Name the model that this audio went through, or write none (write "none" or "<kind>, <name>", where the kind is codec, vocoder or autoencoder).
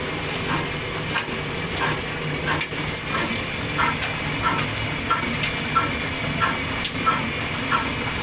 none